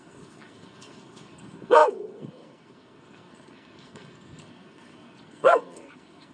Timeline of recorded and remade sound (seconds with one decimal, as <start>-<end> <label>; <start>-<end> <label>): 0.0-6.3 remade